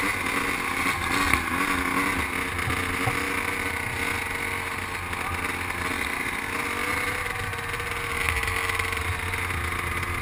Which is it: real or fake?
real